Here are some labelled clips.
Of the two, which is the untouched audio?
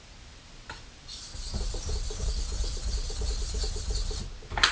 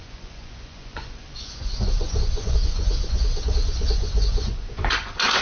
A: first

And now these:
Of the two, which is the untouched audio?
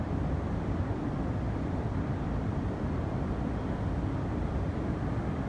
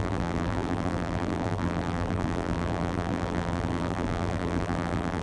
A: first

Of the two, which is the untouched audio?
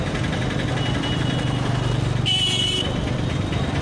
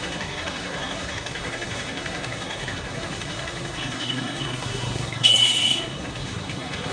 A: first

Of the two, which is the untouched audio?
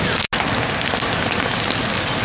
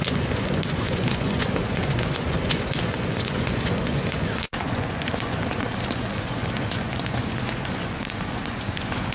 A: first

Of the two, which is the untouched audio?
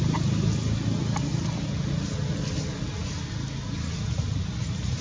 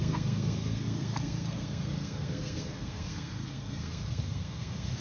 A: first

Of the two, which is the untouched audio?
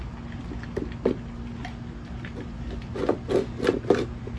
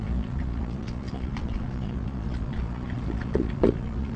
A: first